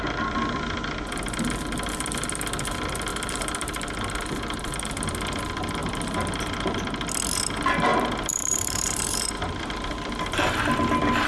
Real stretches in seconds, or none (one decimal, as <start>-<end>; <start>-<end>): 0.0-3.1; 4.7-7.9; 10.6-11.3